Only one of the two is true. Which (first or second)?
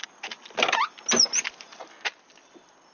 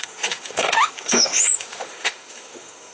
first